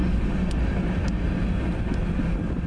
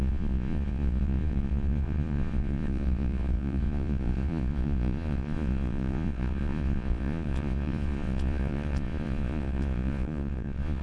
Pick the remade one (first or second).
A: second